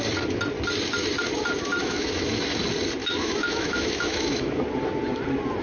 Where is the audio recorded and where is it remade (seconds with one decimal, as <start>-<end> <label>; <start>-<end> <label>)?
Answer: 0.0-1.8 recorded; 1.8-2.4 remade; 2.4-3.0 recorded; 3.0-4.6 remade; 4.6-5.6 recorded